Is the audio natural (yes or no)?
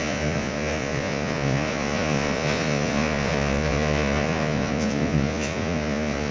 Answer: no